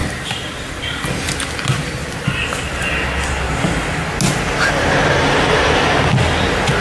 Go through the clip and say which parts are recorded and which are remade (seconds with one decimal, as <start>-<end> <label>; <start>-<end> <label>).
0.0-1.2 remade; 1.2-6.8 recorded